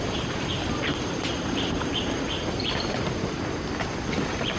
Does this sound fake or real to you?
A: real